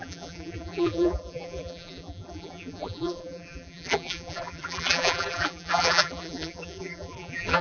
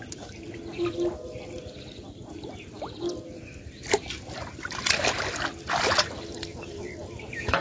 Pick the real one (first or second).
second